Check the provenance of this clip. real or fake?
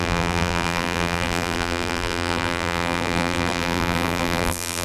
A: fake